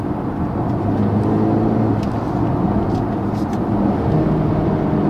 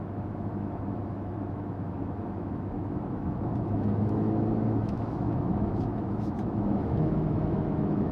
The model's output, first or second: second